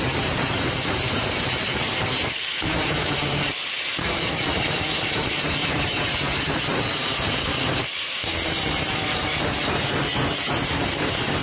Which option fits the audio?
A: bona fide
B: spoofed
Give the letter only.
B